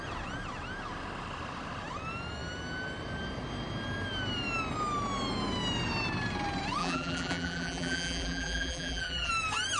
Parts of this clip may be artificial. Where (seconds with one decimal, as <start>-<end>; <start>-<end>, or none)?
6.8-9.3